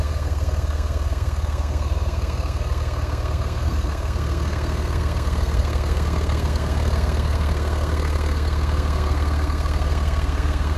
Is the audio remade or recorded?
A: remade